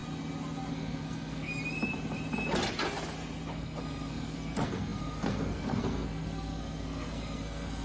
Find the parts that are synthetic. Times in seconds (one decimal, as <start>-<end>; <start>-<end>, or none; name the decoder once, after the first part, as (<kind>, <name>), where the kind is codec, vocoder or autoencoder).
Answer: 0.7-1.5 (codec, SNAC); 3.5-7.8